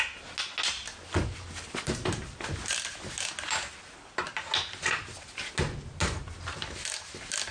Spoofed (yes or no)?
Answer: no